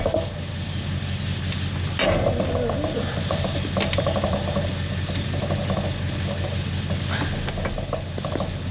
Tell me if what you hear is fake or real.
real